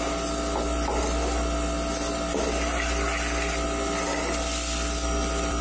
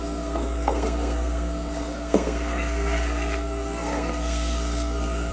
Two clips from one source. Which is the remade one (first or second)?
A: second